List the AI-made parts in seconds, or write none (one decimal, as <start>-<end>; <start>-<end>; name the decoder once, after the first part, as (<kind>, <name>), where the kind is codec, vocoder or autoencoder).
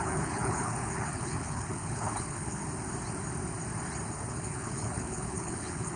0.0-2.6 (codec, HILCodec); 4.3-6.0